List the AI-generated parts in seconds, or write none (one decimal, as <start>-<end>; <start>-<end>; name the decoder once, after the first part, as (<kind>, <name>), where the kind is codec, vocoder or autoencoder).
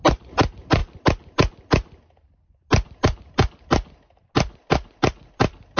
none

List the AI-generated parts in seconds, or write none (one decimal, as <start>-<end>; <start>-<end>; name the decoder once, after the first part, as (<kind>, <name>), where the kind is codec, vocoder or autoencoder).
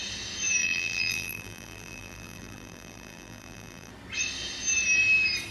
0.6-3.9 (vocoder, BigVGAN v2)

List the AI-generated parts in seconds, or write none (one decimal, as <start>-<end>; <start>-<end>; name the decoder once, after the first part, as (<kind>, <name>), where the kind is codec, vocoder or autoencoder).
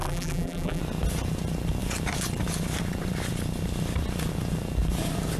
0.0-0.8 (vocoder, BigVGAN v2)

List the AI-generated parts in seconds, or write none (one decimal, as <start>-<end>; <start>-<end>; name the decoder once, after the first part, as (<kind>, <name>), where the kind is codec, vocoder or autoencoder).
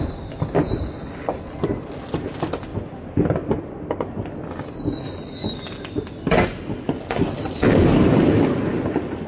none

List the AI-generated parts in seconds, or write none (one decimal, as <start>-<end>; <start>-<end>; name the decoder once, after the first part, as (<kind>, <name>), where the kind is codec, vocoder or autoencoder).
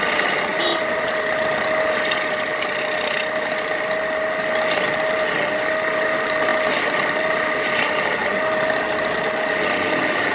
0.5-1.1 (vocoder, BigVGAN v2)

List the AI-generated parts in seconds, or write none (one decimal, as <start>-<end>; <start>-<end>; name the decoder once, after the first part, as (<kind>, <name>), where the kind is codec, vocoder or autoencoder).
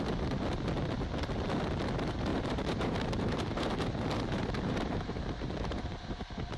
2.3-6.6 (vocoder, BigVGAN v2)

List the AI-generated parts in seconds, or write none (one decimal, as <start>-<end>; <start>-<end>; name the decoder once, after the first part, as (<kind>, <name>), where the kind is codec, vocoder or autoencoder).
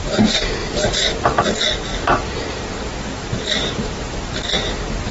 0.6-1.2 (vocoder, BigVGAN v2); 1.9-5.1